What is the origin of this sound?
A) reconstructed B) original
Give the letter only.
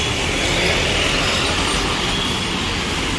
B